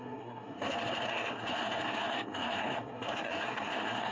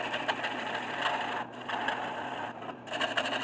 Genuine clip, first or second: second